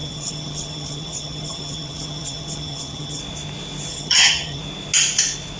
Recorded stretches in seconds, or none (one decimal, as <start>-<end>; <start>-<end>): 3.2-3.9; 4.6-5.6

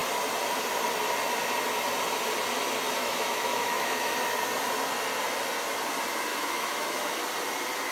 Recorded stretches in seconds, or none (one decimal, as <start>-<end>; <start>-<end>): 0.0-3.0; 4.1-6.3; 7.2-7.9

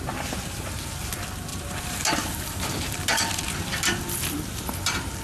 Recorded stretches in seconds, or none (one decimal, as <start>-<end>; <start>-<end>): 0.0-1.5; 4.6-5.2

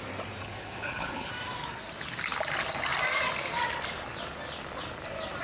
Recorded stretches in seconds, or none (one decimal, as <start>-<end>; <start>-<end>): 0.0-0.4; 1.3-5.4

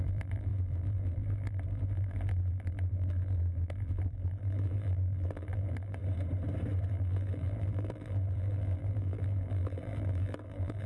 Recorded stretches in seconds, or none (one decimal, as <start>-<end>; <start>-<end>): 6.0-6.9

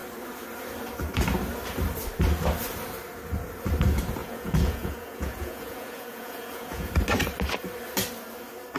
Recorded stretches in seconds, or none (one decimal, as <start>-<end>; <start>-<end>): 0.0-4.2; 6.9-8.8